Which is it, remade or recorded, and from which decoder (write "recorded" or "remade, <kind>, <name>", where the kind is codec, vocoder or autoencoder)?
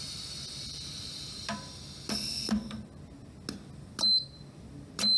recorded